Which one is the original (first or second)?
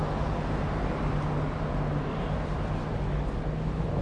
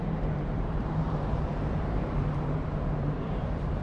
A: first